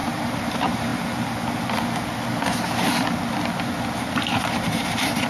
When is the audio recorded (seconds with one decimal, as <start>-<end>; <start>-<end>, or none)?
0.9-4.1